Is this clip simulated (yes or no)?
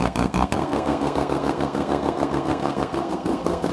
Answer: yes